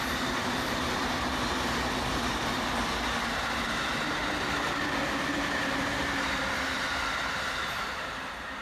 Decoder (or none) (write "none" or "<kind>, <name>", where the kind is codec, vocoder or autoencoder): none